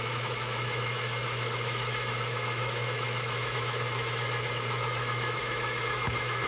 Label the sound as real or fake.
fake